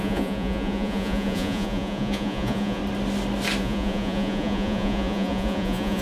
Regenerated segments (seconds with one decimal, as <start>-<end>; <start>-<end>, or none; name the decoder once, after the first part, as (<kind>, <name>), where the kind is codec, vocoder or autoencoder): 0.0-2.8 (vocoder, Vocos); 3.6-6.0